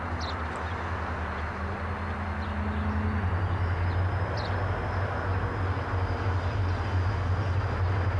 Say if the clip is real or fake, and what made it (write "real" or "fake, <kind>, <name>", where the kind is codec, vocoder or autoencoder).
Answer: real